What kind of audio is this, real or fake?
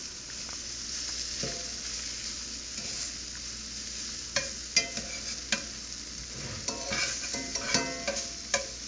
real